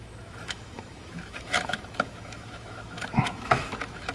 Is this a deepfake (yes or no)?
yes